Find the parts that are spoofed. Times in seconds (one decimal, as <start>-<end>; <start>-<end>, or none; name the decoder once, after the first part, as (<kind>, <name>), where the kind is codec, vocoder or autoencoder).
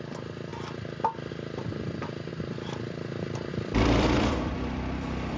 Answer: 0.0-0.5 (vocoder, BigVGAN v2); 1.3-2.3; 3.5-5.4